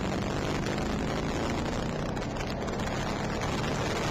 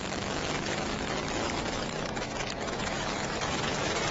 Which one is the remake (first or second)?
second